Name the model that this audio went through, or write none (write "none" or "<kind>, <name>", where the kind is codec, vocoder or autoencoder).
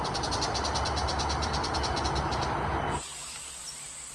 none